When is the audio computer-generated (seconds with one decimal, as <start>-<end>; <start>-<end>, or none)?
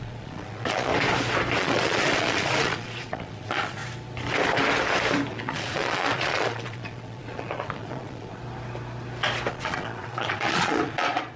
0.0-0.9; 1.6-3.8; 5.3-8.4; 9.5-11.4